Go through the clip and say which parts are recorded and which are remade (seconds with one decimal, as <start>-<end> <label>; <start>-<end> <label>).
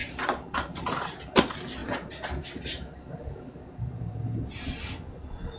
0.0-1.3 remade; 1.3-1.8 recorded; 1.8-4.0 remade; 4.0-5.6 recorded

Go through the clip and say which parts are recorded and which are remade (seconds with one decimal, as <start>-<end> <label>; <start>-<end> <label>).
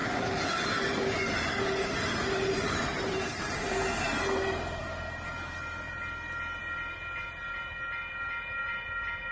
0.0-2.9 recorded; 2.9-3.6 remade; 3.6-9.3 recorded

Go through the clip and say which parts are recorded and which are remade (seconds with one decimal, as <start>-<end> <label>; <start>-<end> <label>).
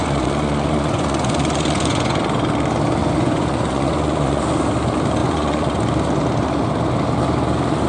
0.0-2.2 remade; 2.2-3.0 recorded; 3.0-4.4 remade; 4.4-5.2 recorded; 5.2-5.8 remade; 5.8-7.9 recorded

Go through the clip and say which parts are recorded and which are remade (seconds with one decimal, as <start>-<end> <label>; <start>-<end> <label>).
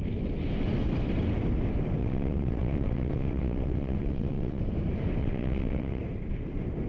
0.0-2.0 recorded; 2.0-4.6 remade; 4.6-5.2 recorded; 5.2-6.0 remade; 6.0-6.9 recorded